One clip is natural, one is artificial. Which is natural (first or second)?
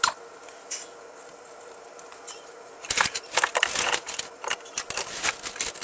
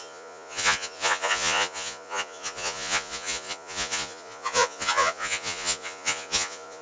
first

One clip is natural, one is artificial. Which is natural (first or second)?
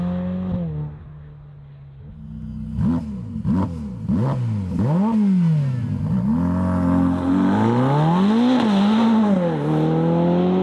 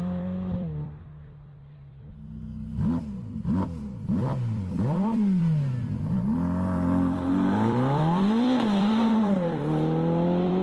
first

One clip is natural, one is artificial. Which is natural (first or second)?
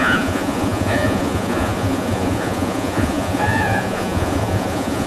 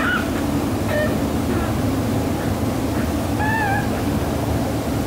second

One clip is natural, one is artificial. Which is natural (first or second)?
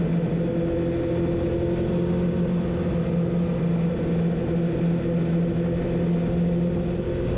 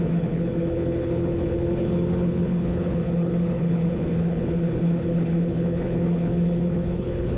first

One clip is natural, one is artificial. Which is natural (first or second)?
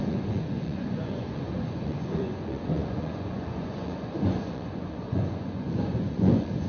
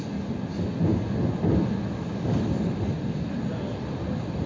second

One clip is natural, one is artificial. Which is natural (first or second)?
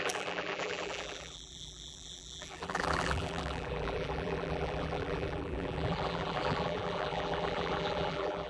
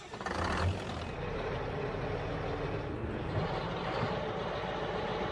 second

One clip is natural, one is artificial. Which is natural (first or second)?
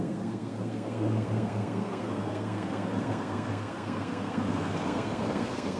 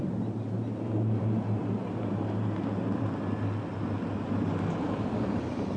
second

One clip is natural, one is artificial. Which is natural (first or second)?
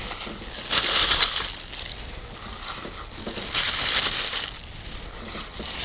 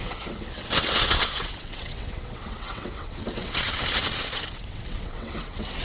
first